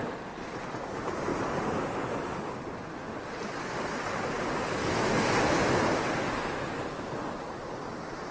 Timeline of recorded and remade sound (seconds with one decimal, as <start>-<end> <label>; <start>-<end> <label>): 0.0-8.3 recorded